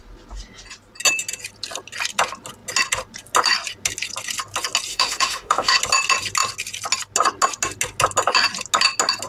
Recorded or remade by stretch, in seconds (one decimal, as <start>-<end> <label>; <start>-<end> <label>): 0.0-4.9 recorded; 4.9-5.8 remade; 5.8-9.3 recorded